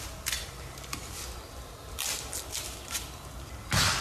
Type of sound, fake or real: real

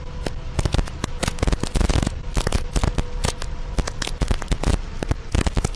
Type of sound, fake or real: real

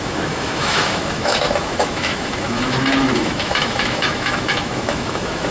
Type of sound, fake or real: fake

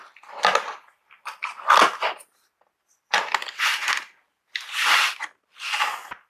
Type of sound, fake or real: real